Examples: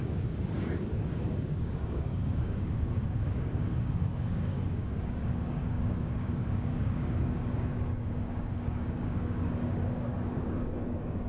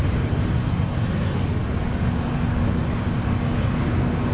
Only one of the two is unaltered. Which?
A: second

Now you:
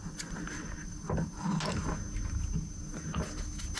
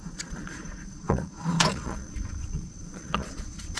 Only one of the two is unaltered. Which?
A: first